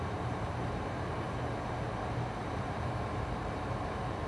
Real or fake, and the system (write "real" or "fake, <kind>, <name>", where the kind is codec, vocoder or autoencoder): fake, vocoder, BigVGAN v2